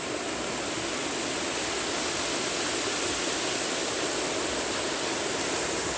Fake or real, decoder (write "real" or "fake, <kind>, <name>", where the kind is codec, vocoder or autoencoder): real